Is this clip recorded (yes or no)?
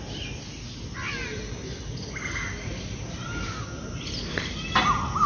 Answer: yes